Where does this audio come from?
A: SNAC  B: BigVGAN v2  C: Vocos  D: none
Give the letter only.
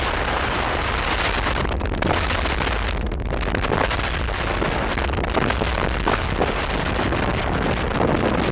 D